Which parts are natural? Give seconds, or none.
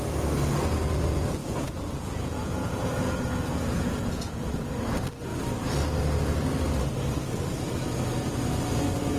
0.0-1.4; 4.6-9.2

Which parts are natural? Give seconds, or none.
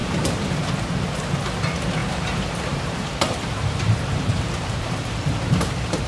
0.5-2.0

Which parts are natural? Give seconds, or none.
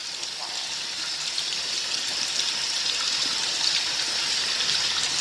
0.0-5.2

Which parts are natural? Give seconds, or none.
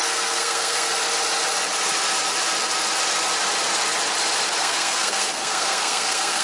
0.9-4.6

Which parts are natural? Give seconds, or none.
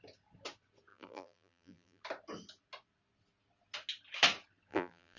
0.0-0.9; 2.0-4.7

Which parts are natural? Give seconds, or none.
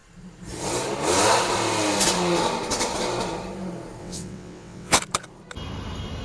0.0-4.0; 5.0-6.2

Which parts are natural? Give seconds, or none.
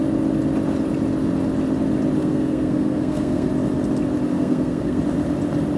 0.0-2.2; 3.5-4.3; 5.0-5.8